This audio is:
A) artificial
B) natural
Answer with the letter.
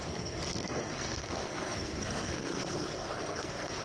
A